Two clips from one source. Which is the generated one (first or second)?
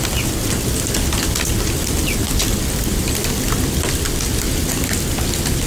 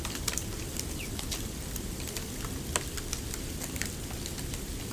second